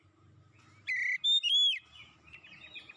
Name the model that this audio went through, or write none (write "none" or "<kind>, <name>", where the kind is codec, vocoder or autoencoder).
none